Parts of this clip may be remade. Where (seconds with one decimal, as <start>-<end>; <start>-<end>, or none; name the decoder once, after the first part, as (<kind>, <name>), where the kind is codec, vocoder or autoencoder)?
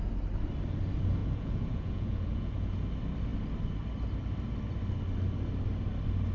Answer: 1.2-2.7 (vocoder, Vocos)